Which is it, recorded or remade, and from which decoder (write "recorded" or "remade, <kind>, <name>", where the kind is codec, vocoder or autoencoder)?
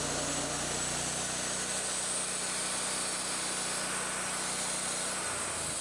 recorded